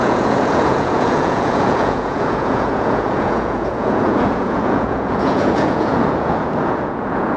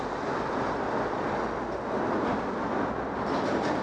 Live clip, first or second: second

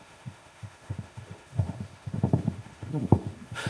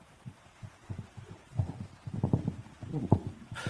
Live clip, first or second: second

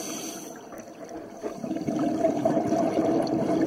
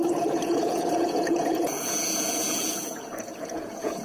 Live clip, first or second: first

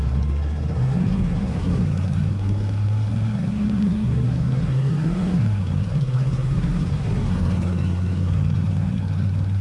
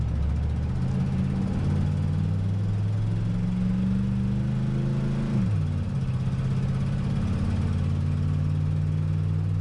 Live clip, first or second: second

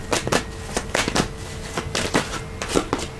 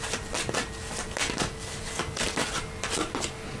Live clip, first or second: first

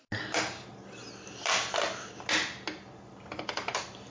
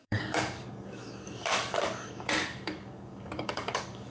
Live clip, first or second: first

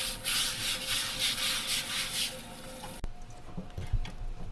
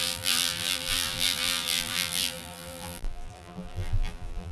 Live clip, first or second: first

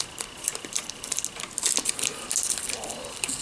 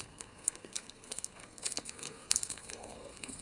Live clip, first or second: first